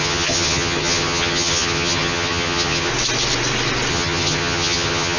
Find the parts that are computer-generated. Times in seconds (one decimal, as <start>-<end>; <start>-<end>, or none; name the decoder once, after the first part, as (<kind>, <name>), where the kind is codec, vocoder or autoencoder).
0.0-2.9 (vocoder, HiFi-GAN); 3.9-5.2